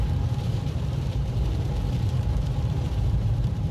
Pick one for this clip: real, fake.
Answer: fake